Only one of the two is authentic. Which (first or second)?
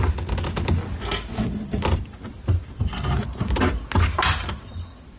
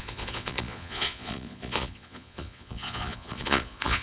first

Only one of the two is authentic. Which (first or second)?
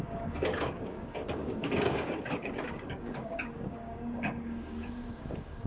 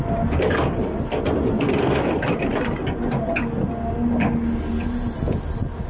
second